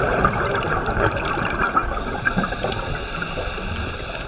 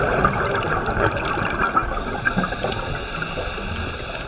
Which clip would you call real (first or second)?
second